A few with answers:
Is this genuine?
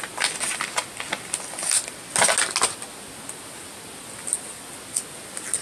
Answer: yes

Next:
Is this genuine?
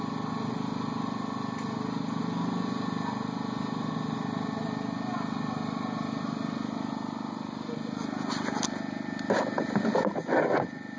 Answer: yes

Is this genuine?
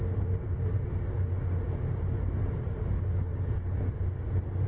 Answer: yes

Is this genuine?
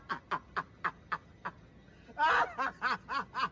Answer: yes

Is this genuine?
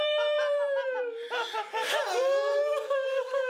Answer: no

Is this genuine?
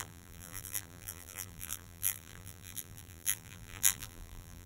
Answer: no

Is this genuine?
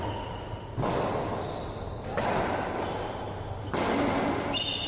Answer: no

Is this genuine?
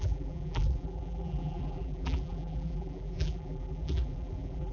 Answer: no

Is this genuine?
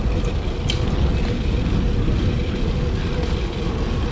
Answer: yes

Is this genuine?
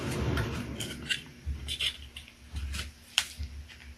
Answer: no